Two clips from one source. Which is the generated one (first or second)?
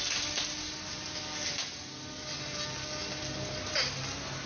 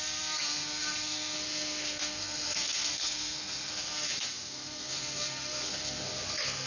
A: second